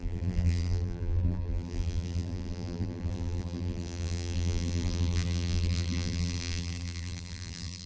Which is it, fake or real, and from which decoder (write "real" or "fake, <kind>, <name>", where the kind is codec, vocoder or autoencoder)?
fake, vocoder, BigVGAN v2